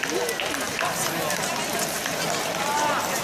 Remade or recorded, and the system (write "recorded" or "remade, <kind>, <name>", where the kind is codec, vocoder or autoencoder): recorded